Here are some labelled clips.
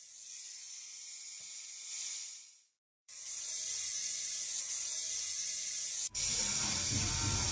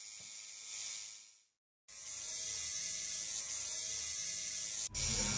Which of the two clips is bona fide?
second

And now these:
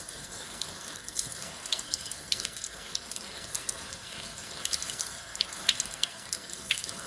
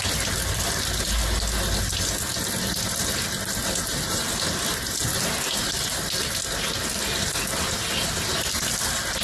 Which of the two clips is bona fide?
second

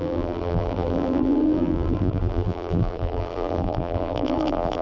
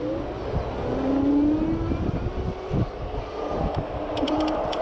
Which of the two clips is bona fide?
second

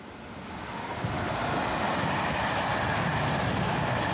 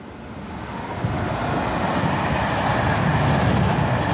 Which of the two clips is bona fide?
second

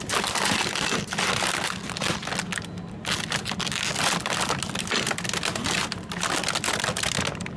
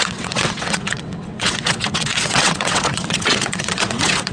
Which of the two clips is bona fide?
first